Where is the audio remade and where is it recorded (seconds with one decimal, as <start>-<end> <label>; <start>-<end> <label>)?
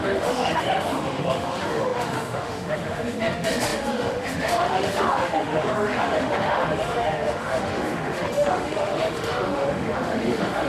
0.0-10.7 remade